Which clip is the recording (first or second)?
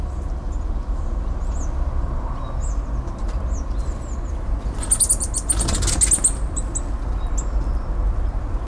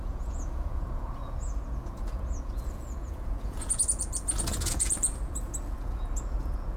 first